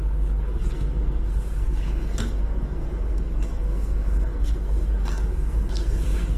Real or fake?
fake